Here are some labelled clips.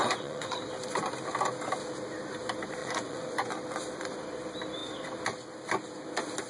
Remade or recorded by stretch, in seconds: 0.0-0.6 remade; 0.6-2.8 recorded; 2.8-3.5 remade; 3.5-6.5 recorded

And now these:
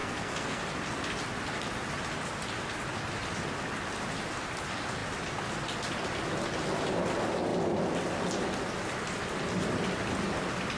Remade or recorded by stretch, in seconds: 0.0-0.6 remade; 0.6-10.8 recorded

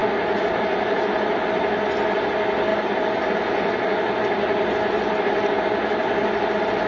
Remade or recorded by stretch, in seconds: 0.0-1.0 remade; 1.0-6.9 recorded

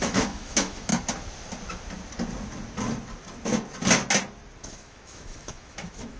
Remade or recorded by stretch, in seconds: 0.0-0.9 remade; 0.9-4.6 recorded; 4.6-6.2 remade

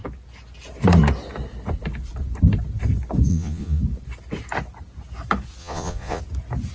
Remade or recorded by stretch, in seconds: 0.0-3.3 recorded; 3.3-3.8 remade; 3.8-5.6 recorded; 5.6-6.2 remade; 6.2-6.7 recorded